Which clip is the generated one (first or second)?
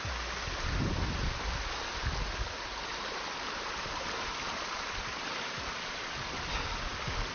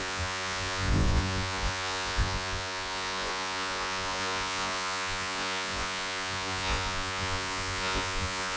second